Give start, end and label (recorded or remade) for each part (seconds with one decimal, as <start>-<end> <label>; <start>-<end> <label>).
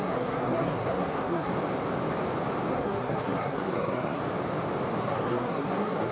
0.0-1.5 remade; 1.5-2.7 recorded; 2.7-4.2 remade; 4.2-5.0 recorded; 5.0-6.1 remade